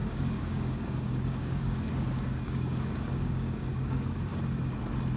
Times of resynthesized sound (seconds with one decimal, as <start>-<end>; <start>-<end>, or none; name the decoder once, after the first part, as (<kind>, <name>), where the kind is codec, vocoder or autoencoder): 0.0-4.3 (codec, DAC)